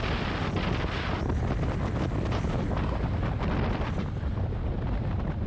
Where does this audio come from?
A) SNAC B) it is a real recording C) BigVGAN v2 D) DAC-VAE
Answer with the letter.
B